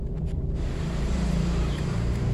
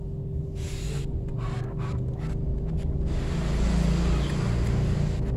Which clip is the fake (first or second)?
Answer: first